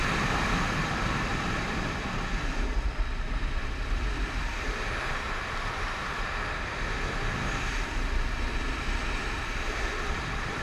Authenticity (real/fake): fake